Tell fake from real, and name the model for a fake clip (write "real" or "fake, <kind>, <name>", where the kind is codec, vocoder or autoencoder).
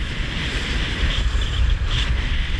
fake, vocoder, BigVGAN v2